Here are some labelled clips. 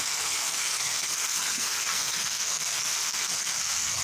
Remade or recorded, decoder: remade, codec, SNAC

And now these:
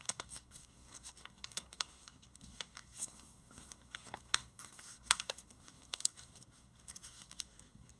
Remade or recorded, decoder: remade, codec, SNAC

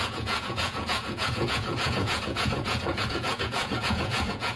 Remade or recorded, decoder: remade, vocoder, Vocos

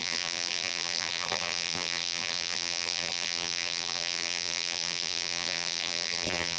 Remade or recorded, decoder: remade, vocoder, BigVGAN v2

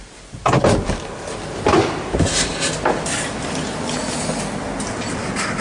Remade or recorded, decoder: recorded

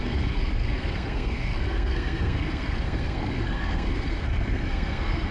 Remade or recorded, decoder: remade, codec, SNAC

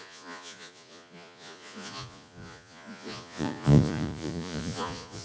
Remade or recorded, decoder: remade, vocoder, Vocos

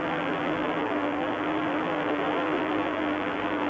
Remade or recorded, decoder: remade, vocoder, BigVGAN v2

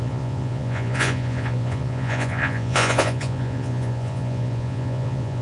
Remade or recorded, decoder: remade, vocoder, Vocos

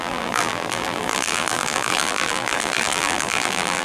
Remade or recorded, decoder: remade, vocoder, BigVGAN v2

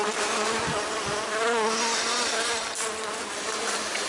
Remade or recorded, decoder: recorded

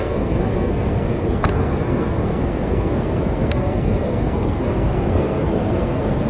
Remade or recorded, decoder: remade, codec, SNAC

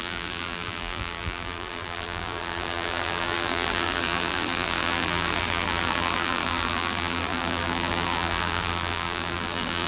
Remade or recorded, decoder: remade, vocoder, BigVGAN v2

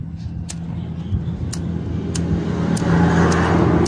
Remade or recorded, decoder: recorded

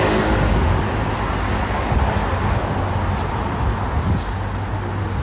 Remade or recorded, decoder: recorded